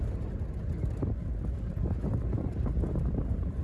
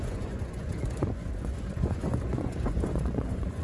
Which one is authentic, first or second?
first